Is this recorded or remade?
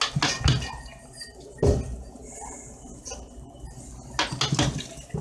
recorded